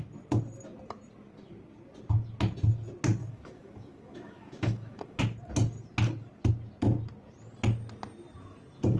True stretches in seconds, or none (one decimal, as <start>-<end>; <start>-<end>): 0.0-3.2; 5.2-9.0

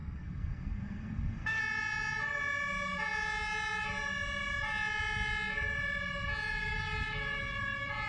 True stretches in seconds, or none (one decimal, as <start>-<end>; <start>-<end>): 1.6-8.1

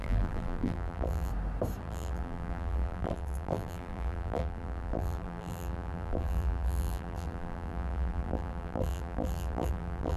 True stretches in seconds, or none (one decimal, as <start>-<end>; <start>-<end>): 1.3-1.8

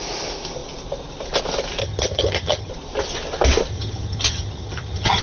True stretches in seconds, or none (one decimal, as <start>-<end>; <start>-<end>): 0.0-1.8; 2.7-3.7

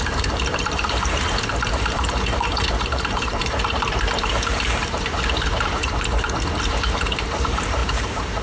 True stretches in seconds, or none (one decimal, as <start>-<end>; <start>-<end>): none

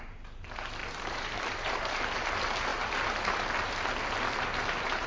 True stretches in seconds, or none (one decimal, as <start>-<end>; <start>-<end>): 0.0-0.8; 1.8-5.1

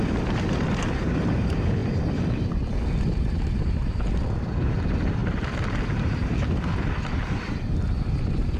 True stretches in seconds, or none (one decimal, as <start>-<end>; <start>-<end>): 0.0-1.8; 2.7-5.2; 7.7-8.6

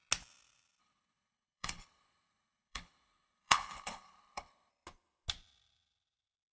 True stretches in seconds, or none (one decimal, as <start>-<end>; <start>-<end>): 0.0-0.8; 4.7-6.5